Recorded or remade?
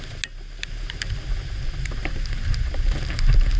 recorded